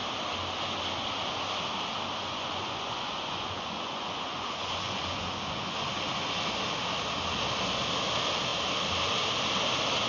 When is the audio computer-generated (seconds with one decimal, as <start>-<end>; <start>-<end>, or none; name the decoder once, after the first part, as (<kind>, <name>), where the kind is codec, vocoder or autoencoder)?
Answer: 2.2-5.9 (vocoder, Vocos)